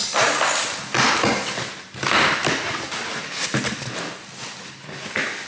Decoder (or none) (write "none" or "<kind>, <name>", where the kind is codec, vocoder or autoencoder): none